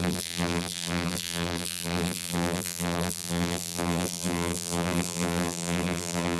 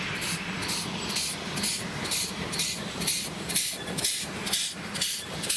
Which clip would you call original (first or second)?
second